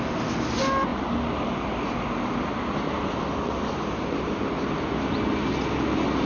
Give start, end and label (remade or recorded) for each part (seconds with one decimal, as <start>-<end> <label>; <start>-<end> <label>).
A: 0.0-6.3 recorded